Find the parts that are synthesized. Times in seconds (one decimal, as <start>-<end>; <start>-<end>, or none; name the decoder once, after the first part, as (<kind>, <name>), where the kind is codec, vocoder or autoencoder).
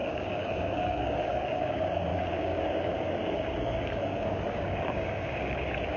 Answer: 0.0-6.0 (codec, DAC)